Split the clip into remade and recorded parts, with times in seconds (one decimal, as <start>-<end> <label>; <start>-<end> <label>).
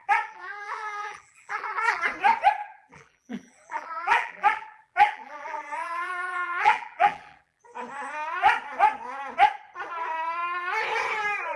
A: 0.0-2.0 remade; 2.0-2.6 recorded; 2.6-7.6 remade; 7.6-11.6 recorded